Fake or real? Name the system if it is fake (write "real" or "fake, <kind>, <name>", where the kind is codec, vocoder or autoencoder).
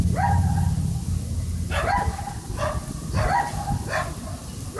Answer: real